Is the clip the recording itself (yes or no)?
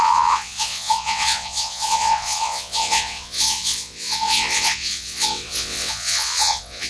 no